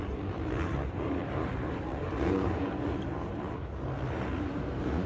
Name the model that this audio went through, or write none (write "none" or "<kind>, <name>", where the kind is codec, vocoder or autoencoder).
vocoder, BigVGAN v2